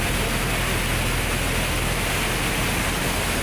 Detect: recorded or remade recorded